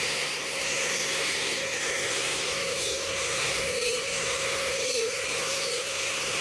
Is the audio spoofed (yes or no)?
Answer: yes